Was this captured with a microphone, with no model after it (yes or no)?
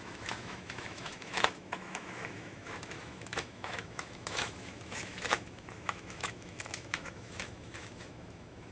no